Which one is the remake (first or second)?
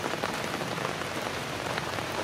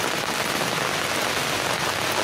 first